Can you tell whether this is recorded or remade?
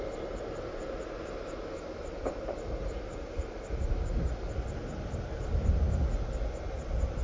recorded